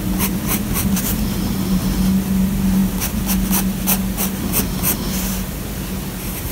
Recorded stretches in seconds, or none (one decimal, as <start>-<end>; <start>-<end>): 0.0-6.5